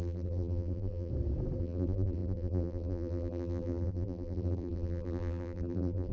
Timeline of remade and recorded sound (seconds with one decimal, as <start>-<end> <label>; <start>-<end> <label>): 0.0-1.1 remade; 1.1-1.6 recorded; 1.6-6.1 remade